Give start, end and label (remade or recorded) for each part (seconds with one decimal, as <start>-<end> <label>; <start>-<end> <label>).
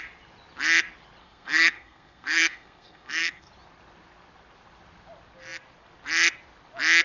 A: 0.0-1.2 recorded; 1.2-3.5 remade; 3.5-7.0 recorded